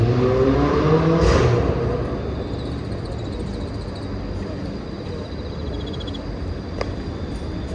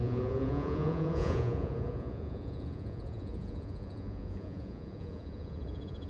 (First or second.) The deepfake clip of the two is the second